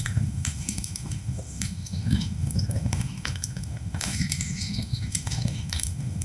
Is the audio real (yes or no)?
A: no